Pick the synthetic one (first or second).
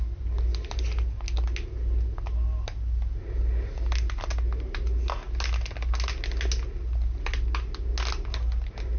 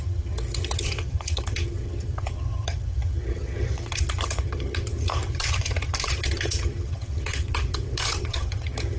second